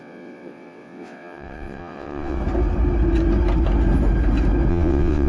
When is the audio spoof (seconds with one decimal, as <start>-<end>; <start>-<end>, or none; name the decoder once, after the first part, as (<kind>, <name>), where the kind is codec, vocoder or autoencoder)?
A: 0.0-2.4 (vocoder, WaveNeXt); 4.7-5.3